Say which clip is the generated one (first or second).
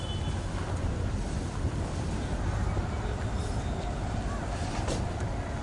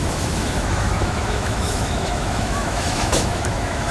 second